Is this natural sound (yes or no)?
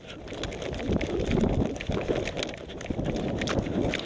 yes